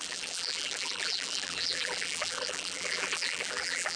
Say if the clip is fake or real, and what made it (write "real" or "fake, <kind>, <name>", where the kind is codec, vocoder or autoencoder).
fake, vocoder, BigVGAN v2